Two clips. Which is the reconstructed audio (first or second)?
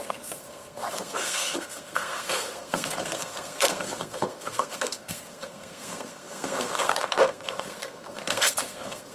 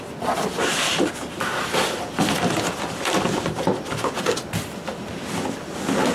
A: first